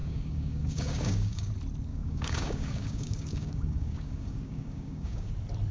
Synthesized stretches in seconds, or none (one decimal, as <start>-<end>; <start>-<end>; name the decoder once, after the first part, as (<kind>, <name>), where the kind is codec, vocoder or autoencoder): 0.0-1.5 (codec, DAC); 1.9-5.3